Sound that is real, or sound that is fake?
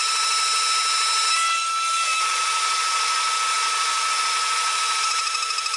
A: real